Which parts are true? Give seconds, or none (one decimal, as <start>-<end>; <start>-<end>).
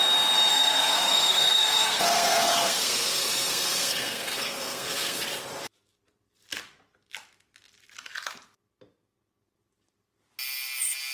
0.0-0.5; 5.2-11.1